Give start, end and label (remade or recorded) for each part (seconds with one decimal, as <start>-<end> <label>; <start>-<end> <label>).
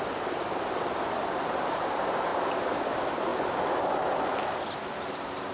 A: 0.0-5.5 recorded